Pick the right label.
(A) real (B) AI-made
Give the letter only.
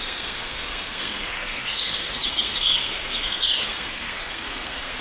B